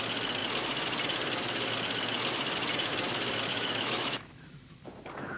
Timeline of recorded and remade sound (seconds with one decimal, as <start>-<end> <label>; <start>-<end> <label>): 0.0-3.5 recorded; 3.5-4.8 remade; 4.8-5.4 recorded